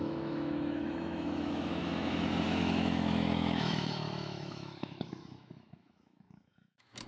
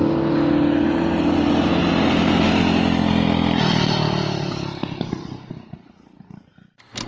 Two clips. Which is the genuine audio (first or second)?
second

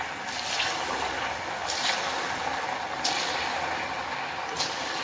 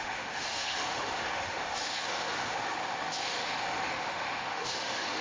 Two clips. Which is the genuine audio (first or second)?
first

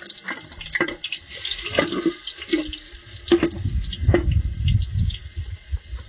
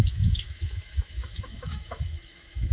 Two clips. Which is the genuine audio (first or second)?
first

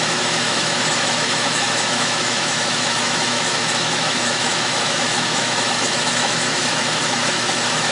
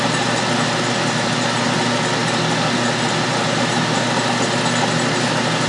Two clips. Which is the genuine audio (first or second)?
second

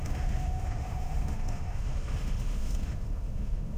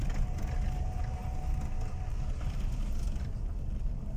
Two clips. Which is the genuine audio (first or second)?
second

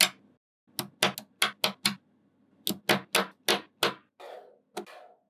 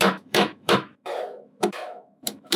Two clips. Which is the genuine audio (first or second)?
first